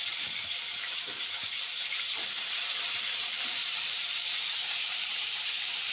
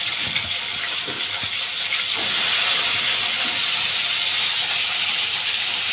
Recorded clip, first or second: second